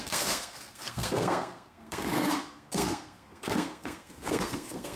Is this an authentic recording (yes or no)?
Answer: no